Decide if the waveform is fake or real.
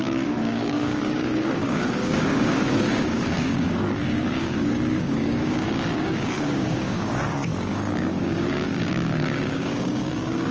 fake